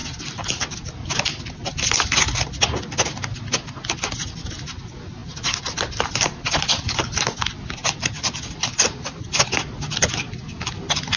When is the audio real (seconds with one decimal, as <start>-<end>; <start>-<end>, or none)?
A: 0.0-11.2